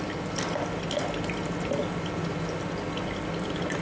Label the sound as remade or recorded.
recorded